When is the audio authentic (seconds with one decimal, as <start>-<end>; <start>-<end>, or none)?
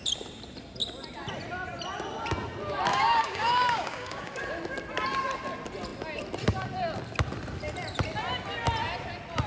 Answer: 0.0-2.9; 4.4-9.5